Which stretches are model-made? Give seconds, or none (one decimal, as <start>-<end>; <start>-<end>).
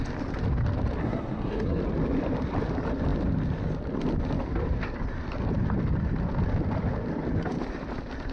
1.0-1.8